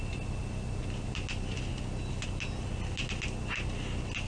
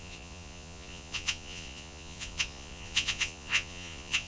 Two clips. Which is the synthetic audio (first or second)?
second